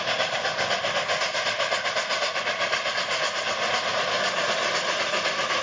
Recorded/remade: recorded